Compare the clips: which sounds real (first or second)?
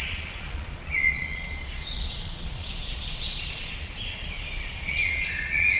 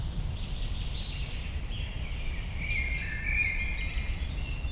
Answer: second